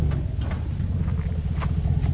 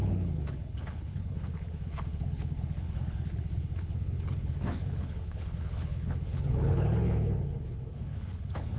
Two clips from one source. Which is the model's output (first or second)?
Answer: second